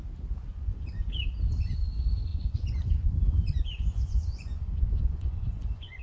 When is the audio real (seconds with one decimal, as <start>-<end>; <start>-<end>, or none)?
0.0-0.5; 1.3-2.3